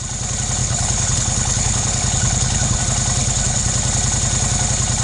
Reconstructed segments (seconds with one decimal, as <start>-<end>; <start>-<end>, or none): 0.6-2.8; 3.2-3.7